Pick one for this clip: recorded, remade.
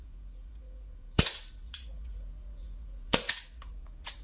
remade